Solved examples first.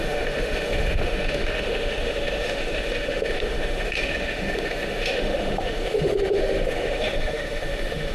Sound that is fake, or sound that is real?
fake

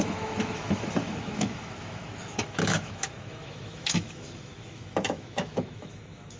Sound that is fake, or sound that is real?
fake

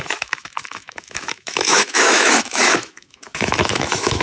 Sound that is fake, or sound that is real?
fake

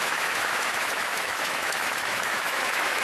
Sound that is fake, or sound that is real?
fake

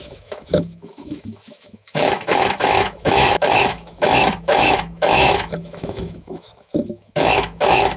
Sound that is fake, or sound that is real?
fake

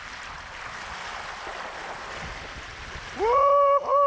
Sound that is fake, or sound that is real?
real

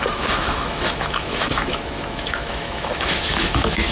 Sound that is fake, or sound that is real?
fake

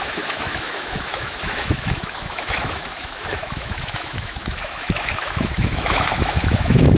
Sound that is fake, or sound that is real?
fake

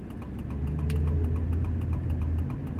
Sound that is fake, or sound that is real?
real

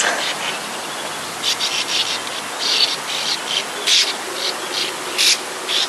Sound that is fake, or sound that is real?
real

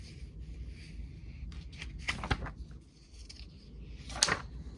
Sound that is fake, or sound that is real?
real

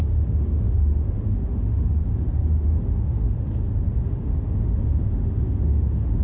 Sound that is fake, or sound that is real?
fake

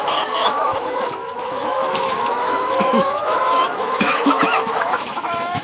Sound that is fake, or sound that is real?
fake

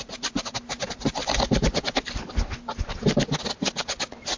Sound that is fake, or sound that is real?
real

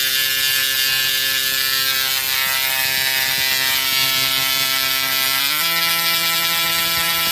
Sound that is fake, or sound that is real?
real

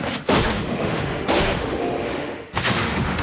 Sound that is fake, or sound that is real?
fake